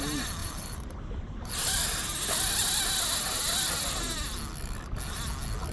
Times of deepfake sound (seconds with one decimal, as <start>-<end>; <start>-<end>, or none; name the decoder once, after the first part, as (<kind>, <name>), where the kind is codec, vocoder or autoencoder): 0.4-1.5 (vocoder, BigVGAN v2)